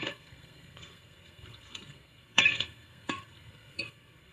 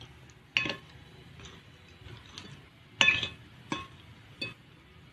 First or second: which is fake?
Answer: first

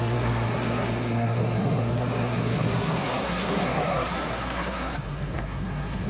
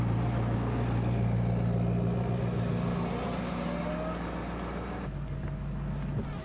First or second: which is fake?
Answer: first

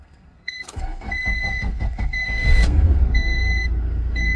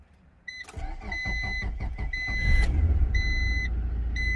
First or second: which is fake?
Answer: first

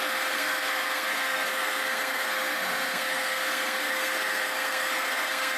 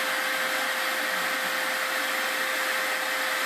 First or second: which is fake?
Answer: first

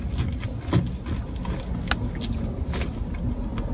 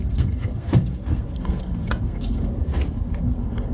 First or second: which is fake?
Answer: second